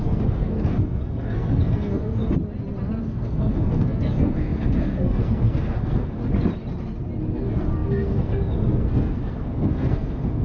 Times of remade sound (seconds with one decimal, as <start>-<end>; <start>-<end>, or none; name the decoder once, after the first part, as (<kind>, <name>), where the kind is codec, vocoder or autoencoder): 0.0-2.2 (codec, SNAC); 3.0-6.2; 7.3-10.4